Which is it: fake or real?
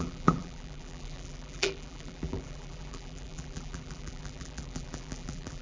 fake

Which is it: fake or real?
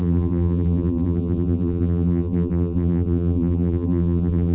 fake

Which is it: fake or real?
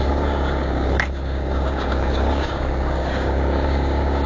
fake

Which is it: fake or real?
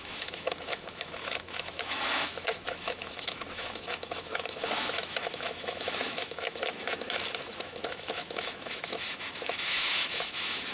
fake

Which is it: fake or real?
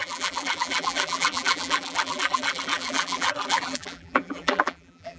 fake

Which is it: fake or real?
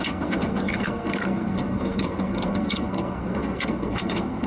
fake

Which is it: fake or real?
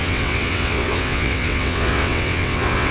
fake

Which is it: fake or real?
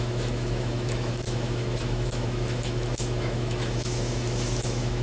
fake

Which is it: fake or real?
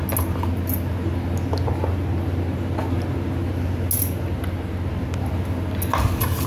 real